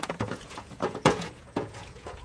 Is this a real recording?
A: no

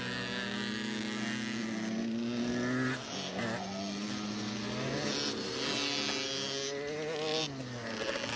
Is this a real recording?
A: yes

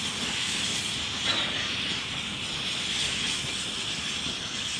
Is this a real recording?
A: yes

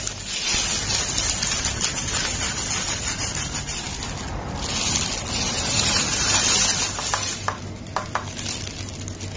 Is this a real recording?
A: yes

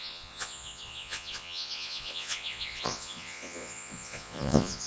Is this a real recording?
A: no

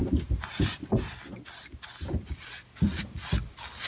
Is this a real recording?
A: yes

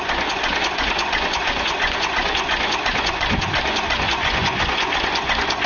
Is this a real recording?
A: no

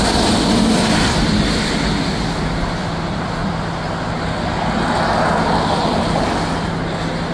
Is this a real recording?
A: yes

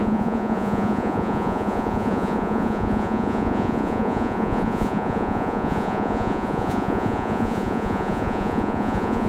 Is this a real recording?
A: no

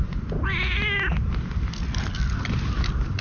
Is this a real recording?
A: yes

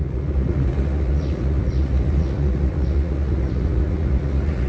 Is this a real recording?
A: no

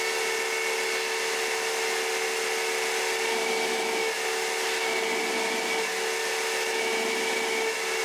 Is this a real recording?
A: yes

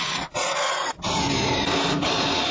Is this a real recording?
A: yes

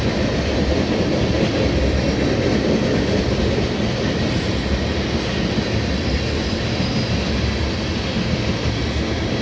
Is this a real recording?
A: yes